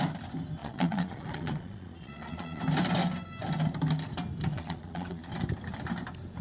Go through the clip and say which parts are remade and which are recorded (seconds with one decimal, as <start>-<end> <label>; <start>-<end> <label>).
0.0-0.6 recorded; 0.6-2.6 remade; 2.6-4.5 recorded; 4.5-5.3 remade; 5.3-6.4 recorded

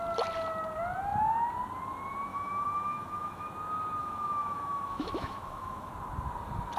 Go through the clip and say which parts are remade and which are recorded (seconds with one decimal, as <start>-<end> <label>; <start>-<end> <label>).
0.0-2.3 recorded; 2.3-3.5 remade; 3.5-4.0 recorded; 4.0-5.9 remade; 5.9-6.8 recorded

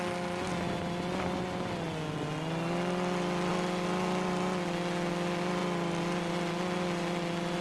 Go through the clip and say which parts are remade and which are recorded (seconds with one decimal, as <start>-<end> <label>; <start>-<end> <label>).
0.0-7.6 recorded